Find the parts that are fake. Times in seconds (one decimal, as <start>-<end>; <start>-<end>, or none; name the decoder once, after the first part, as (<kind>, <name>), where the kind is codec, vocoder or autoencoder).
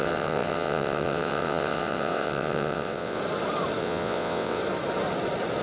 0.0-3.2 (vocoder, WaveNeXt); 3.8-4.6